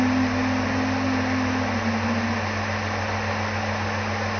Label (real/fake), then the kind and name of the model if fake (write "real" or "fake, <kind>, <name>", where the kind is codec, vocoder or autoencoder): real